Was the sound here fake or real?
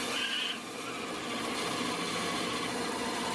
real